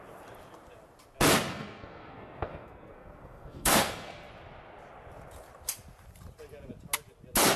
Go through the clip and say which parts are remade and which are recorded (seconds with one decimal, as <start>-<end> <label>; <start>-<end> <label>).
0.0-1.5 recorded; 1.5-4.3 remade; 4.3-7.6 recorded